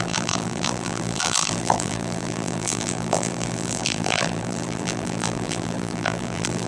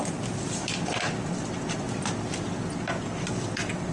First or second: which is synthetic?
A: first